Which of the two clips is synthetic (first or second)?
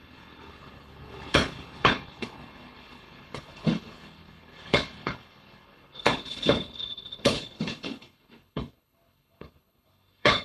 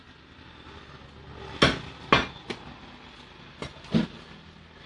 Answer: first